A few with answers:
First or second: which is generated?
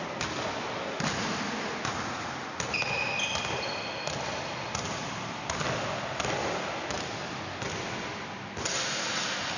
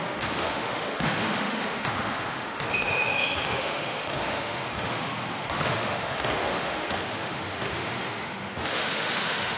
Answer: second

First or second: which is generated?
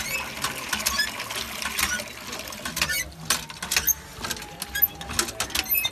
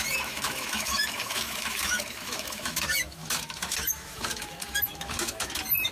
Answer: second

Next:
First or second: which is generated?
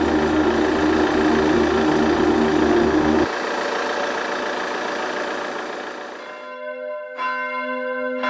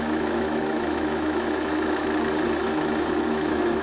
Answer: second